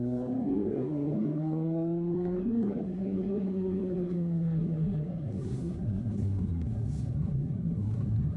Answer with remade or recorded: remade